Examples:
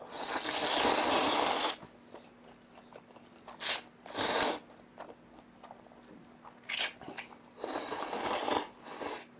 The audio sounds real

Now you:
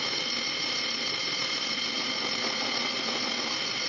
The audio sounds real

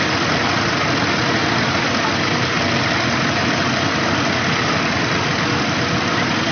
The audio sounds real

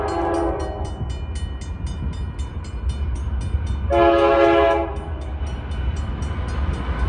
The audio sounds real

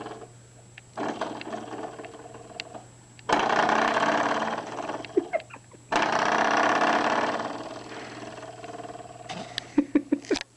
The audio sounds real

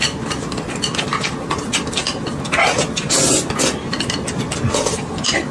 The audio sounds real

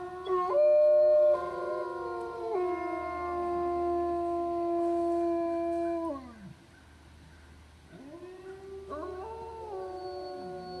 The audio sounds real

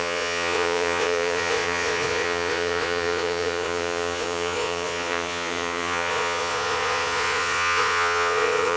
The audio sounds fake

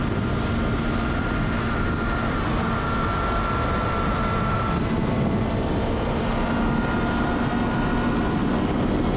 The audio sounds real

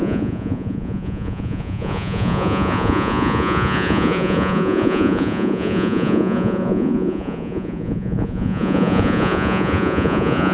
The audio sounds fake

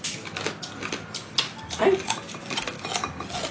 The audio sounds real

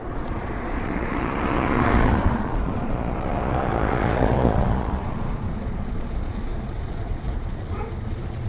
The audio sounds fake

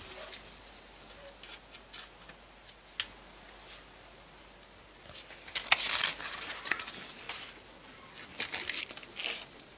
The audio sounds real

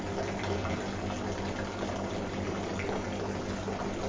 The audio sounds real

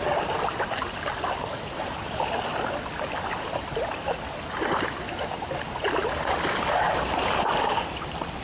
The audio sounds real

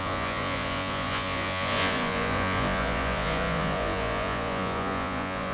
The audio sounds fake